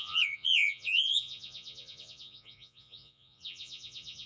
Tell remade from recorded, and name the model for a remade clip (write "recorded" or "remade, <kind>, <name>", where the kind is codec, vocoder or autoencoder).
remade, vocoder, Vocos